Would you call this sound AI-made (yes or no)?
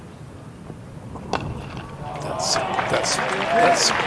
no